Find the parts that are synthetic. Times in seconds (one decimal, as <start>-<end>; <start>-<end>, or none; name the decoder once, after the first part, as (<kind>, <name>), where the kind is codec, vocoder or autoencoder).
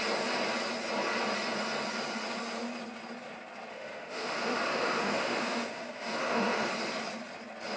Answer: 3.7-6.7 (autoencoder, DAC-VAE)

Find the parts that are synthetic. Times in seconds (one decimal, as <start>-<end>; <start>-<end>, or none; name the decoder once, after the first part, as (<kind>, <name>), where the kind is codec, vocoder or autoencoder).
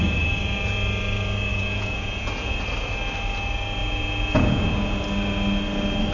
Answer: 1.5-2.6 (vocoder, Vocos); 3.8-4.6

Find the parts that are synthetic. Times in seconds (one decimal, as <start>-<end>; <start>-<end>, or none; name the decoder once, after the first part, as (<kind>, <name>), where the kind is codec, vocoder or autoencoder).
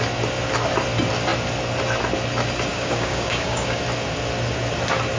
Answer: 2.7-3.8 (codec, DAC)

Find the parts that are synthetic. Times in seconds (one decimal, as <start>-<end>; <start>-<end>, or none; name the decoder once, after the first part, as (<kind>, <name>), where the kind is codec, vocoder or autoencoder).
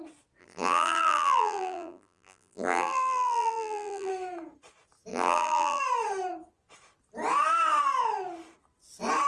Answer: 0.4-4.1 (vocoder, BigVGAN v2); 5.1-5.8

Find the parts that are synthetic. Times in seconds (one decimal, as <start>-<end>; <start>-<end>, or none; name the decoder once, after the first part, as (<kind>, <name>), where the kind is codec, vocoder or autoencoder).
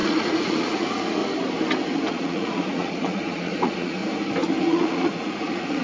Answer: 0.0-1.2 (vocoder, Vocos); 2.1-4.0; 4.6-5.8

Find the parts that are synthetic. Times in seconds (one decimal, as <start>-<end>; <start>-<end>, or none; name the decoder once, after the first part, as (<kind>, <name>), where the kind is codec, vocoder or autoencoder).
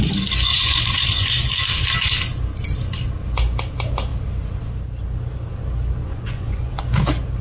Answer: 0.5-1.5 (vocoder, Vocos); 6.0-6.8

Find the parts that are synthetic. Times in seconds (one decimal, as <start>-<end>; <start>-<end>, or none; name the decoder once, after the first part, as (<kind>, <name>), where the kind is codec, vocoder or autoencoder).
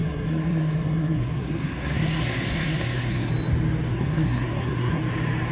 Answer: 0.0-3.3 (codec, SNAC); 3.9-5.0